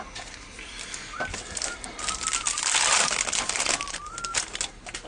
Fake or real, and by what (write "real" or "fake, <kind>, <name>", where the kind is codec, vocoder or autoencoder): real